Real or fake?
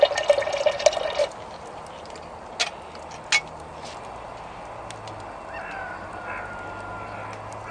real